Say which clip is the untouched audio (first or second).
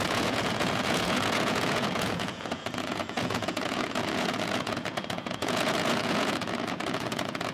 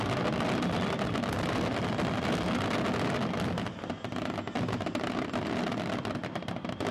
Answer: second